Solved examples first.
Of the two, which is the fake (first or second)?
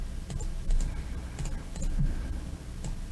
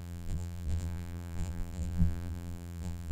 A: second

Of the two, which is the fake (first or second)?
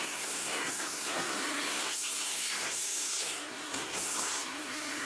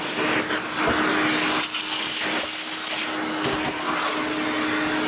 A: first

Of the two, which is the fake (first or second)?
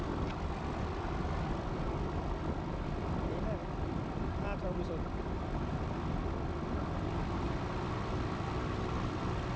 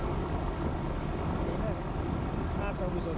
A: first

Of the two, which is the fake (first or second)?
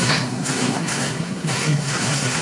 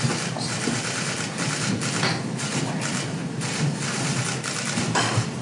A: first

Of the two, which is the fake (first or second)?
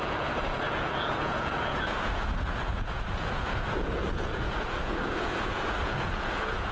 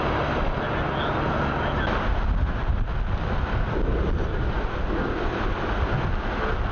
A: first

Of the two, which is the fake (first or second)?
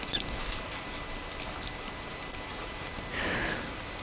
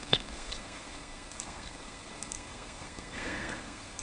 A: second